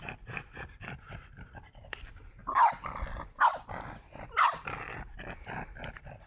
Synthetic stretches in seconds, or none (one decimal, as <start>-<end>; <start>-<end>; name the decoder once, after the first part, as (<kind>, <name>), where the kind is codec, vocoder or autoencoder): 0.0-2.4 (vocoder, BigVGAN v2)